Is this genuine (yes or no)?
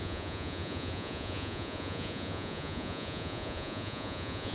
no